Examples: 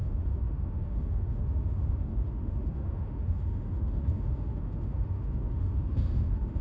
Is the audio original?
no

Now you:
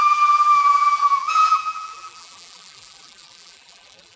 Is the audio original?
no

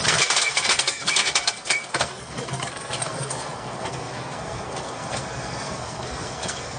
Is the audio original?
no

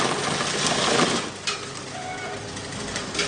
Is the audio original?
yes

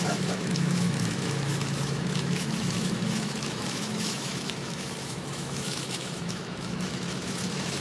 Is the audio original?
no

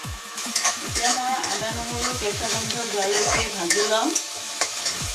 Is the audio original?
no